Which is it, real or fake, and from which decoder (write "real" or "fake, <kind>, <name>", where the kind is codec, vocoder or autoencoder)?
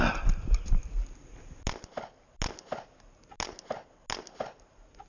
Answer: real